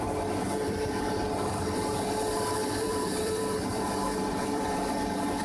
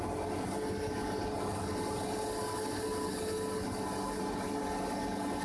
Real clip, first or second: second